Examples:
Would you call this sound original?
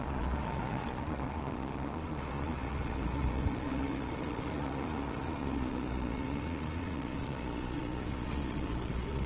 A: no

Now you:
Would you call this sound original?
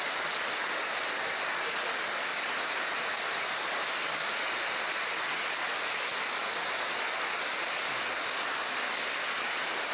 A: yes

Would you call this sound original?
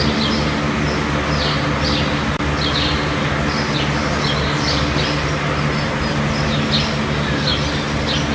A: yes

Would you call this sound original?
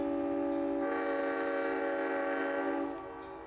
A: yes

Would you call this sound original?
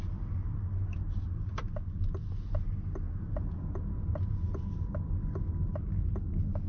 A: yes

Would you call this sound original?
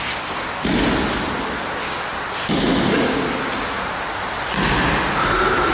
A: yes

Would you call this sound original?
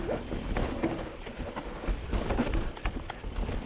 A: yes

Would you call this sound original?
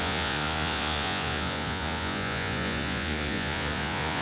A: no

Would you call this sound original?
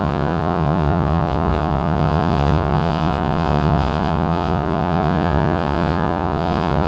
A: no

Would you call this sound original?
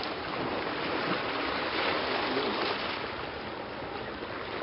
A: yes